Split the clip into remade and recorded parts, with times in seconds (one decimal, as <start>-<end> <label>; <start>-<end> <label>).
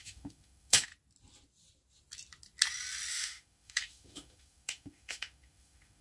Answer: 0.0-0.9 remade; 0.9-3.1 recorded; 3.1-6.0 remade